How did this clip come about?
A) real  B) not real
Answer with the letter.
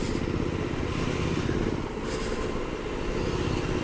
A